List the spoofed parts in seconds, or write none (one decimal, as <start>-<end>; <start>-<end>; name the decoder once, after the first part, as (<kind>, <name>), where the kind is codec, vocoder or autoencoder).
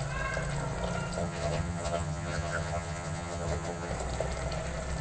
1.2-3.9 (vocoder, HiFi-GAN)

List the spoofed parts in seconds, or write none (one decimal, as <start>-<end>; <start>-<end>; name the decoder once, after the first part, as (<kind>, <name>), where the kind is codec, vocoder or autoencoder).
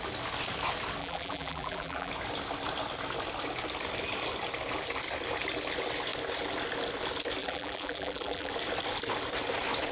1.0-2.1 (vocoder, BigVGAN v2); 7.4-8.5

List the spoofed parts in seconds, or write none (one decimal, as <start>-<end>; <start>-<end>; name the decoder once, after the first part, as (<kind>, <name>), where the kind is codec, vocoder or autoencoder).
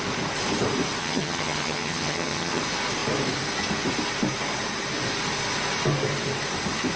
1.0-2.6 (vocoder, HiFi-GAN)